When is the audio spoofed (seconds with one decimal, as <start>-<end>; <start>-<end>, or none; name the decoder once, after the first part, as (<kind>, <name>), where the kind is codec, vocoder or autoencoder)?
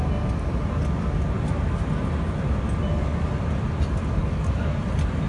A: 4.2-4.7 (codec, DAC)